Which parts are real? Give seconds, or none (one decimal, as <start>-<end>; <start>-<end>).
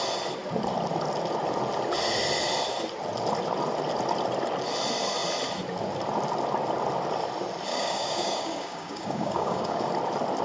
0.0-7.7; 9.9-10.4